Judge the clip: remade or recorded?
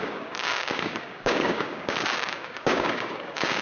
remade